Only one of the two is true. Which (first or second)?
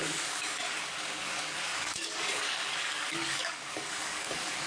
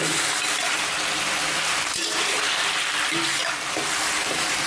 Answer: second